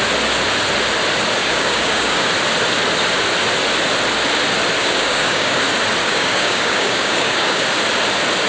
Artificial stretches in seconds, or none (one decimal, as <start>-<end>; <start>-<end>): 1.4-2.2; 4.8-5.6; 6.0-7.6